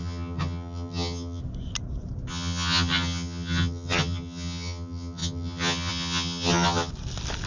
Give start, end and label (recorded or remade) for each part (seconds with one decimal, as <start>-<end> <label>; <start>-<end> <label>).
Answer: 0.0-1.4 remade; 1.4-2.3 recorded; 2.3-6.9 remade; 6.9-7.5 recorded